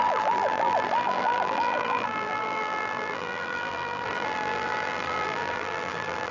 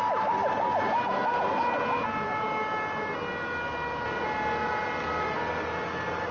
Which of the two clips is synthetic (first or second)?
first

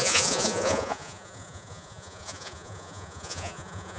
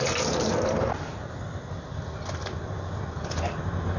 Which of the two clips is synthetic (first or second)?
first